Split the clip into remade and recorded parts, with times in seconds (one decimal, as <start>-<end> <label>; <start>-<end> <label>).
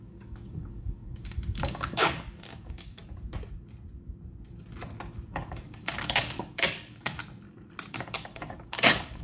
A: 0.0-3.0 remade; 3.0-5.3 recorded; 5.3-7.2 remade; 7.2-7.9 recorded; 7.9-9.2 remade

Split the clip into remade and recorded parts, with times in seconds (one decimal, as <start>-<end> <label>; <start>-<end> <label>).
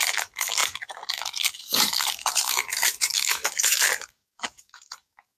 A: 0.0-5.4 remade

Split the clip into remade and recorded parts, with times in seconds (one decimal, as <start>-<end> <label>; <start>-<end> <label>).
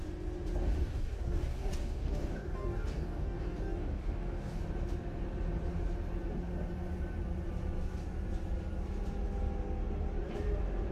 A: 0.0-0.6 recorded; 0.6-4.6 remade; 4.6-10.9 recorded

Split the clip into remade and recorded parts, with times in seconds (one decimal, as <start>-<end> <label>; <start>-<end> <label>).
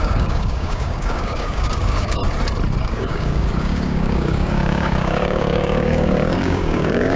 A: 0.0-2.2 remade; 2.2-2.8 recorded; 2.8-7.2 remade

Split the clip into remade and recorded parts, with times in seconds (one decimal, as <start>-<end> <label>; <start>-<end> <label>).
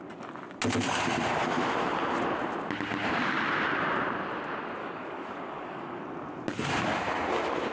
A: 0.0-4.8 recorded; 4.8-6.0 remade; 6.0-7.7 recorded